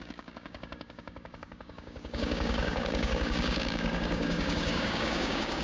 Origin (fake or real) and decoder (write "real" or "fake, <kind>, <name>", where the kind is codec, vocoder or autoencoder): fake, codec, DAC